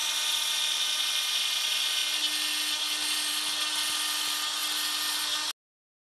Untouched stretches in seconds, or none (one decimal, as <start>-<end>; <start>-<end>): 0.6-6.1